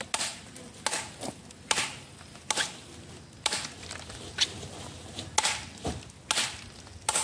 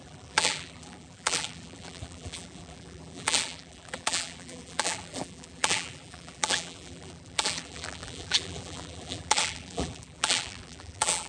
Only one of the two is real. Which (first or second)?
first